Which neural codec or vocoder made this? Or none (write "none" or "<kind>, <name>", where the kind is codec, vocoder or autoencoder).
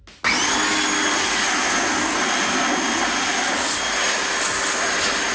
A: none